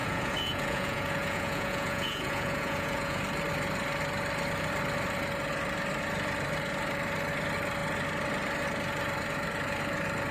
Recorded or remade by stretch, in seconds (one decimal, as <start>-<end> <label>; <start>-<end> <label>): 0.0-3.2 remade; 3.2-10.3 recorded